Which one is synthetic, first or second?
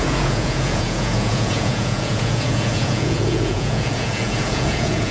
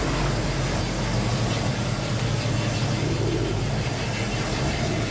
first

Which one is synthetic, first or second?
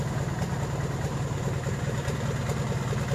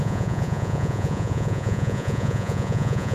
second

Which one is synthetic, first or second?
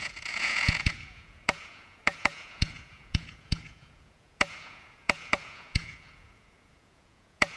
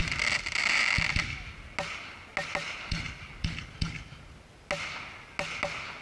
first